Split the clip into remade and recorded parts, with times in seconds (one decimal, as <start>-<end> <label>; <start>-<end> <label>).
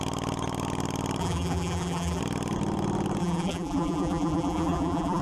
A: 0.0-1.2 recorded; 1.2-2.2 remade; 2.2-3.2 recorded; 3.2-5.2 remade